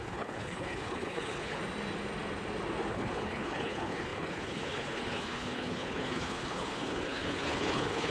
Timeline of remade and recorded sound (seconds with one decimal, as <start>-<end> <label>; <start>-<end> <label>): 0.0-1.6 remade; 1.6-2.9 recorded; 2.9-8.1 remade